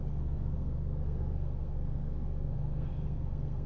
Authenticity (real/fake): fake